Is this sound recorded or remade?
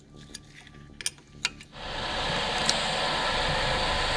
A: recorded